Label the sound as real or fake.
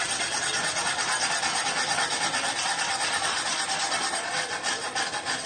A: real